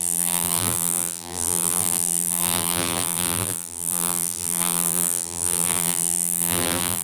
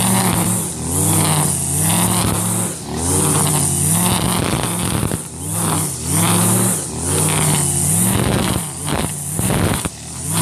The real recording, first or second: second